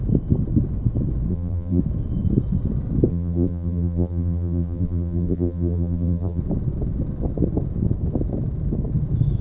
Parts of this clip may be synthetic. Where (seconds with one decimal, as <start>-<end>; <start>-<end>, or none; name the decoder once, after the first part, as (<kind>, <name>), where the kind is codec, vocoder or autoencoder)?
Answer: 1.3-1.8 (vocoder, BigVGAN v2); 3.1-6.4